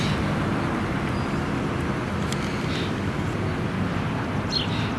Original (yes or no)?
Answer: yes